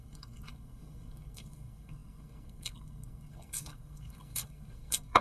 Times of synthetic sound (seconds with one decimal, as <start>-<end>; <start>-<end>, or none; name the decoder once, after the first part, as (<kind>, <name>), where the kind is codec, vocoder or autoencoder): 0.0-5.2 (codec, SNAC)